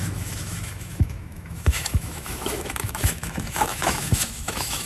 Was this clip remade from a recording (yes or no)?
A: yes